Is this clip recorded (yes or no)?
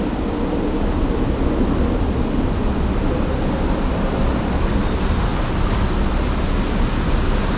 yes